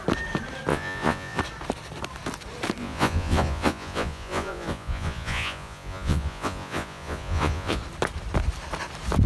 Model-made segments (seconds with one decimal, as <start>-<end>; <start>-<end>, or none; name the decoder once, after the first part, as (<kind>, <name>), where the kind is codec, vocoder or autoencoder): 0.7-1.4 (vocoder, Vocos); 2.8-7.8